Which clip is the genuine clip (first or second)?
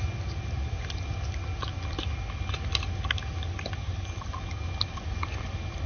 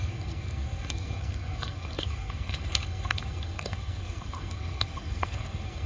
first